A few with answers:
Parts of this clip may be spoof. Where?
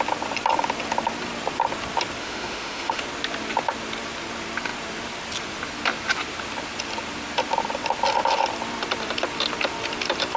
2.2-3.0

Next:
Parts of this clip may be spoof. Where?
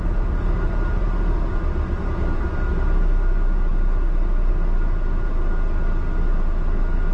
none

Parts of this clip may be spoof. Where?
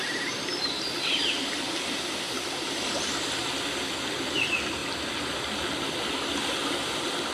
none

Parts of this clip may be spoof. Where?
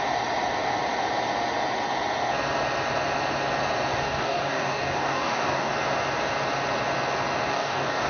3.9-5.7; 7.5-8.1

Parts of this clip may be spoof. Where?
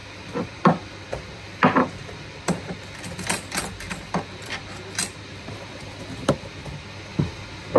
0.0-4.5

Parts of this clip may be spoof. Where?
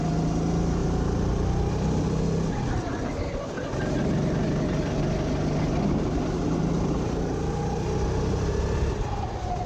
none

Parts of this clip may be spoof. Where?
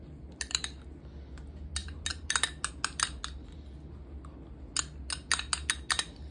none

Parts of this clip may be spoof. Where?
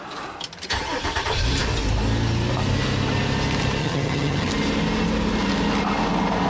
3.8-4.5